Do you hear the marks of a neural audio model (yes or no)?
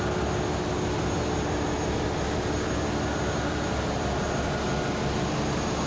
no